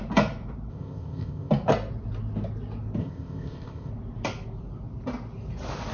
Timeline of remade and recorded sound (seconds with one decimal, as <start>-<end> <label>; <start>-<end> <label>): 0.0-0.7 recorded; 0.7-1.5 remade; 1.5-3.0 recorded; 3.0-3.9 remade; 3.9-5.9 recorded